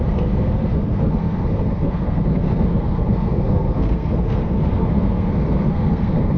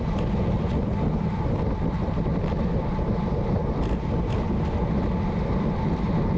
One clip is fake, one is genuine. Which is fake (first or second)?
first